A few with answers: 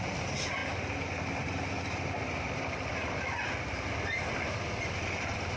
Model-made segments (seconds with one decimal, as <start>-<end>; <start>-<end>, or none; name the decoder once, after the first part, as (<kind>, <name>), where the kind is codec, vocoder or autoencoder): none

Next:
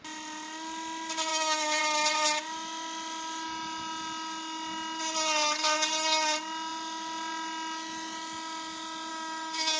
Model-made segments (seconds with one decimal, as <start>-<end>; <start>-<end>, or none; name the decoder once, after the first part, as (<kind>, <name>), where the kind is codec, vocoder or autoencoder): 1.3-1.8 (autoencoder, DAC-VAE); 9.1-9.8

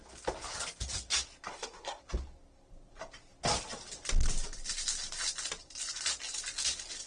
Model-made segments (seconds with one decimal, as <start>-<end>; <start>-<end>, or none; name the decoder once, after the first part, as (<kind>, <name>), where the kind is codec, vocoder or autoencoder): 1.5-2.0 (codec, SNAC)

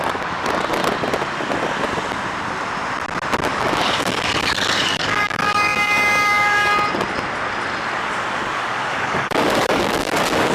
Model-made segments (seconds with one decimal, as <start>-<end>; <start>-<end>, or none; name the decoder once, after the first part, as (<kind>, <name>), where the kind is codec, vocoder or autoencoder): 0.0-0.8 (codec, DAC); 3.5-6.7; 8.1-10.5

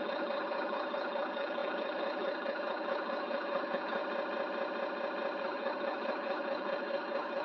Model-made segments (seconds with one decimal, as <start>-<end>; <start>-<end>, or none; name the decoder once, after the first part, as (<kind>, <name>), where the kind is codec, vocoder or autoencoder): 0.0-4.0 (codec, HILCodec); 5.4-7.4